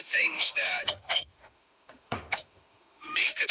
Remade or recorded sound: remade